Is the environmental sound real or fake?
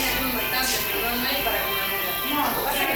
real